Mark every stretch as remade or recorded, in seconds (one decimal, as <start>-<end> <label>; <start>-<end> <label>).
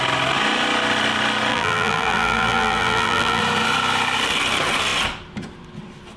0.0-1.5 recorded; 1.5-3.4 remade; 3.4-6.2 recorded